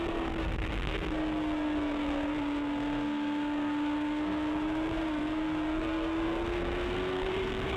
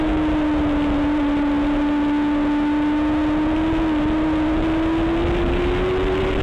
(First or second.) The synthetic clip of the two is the first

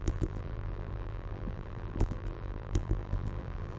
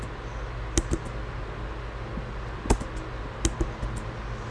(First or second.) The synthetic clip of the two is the first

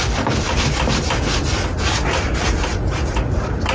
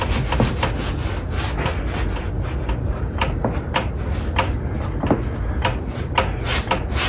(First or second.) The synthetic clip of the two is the first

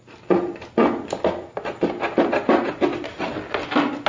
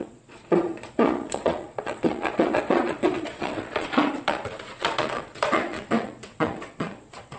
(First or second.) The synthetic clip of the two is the second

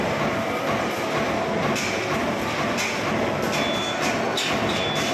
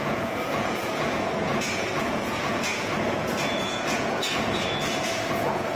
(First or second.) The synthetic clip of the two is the second